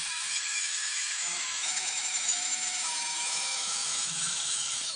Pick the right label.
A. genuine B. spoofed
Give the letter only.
B